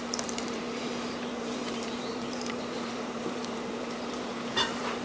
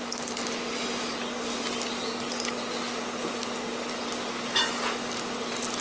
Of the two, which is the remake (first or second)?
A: first